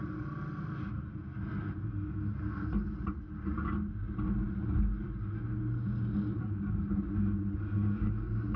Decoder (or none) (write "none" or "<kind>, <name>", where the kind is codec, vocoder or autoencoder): none